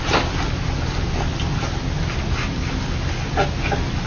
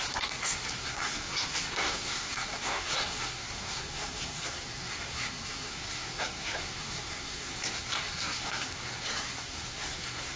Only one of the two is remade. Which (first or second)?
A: second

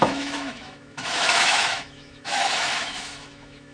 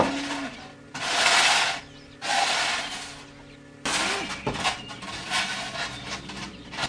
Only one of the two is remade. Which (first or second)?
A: first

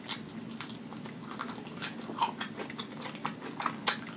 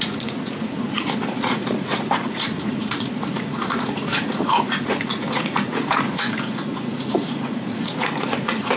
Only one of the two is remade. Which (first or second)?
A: second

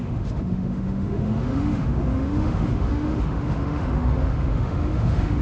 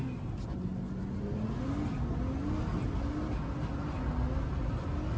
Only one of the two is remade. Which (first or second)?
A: first